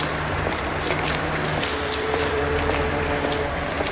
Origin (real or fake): fake